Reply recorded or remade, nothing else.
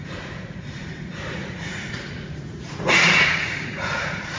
remade